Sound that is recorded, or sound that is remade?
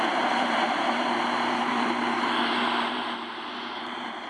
remade